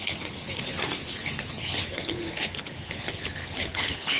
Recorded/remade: remade